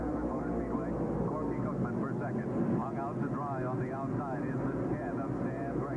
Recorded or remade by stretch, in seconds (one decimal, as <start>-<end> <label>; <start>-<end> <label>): 0.0-6.0 recorded